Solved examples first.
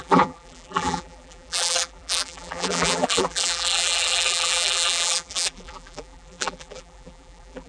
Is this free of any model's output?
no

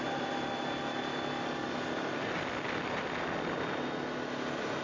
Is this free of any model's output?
yes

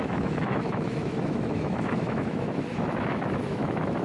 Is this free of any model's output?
no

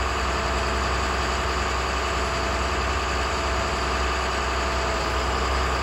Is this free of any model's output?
yes